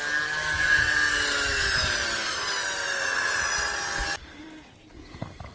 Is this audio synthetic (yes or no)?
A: no